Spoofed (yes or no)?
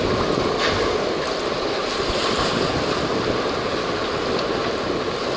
no